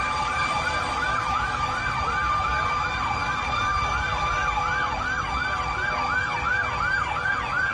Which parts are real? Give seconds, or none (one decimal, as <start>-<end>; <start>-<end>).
0.0-1.1; 1.7-7.7

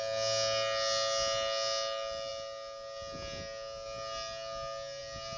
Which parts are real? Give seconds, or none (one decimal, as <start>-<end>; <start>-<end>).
0.0-5.4

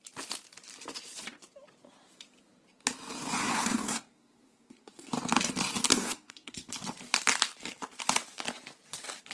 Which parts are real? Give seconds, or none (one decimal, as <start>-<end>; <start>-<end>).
0.0-3.4; 5.1-5.9; 6.7-9.3

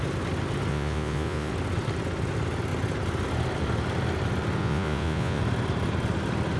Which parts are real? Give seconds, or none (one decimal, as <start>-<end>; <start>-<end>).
0.0-0.7; 1.5-4.6; 5.4-6.6

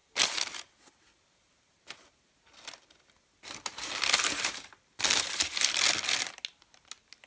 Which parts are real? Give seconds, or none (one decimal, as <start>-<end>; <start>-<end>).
0.0-7.3

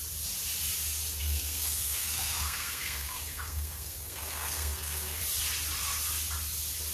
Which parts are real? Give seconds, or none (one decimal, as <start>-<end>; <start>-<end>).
0.0-1.2; 5.2-6.9

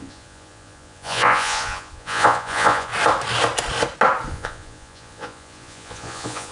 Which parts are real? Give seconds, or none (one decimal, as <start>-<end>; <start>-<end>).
2.9-4.3

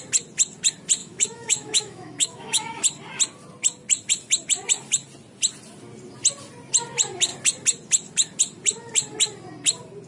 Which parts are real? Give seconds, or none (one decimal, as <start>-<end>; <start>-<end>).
0.0-1.0; 2.8-10.1